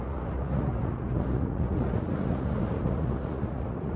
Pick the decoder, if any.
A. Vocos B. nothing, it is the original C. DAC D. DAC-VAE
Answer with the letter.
A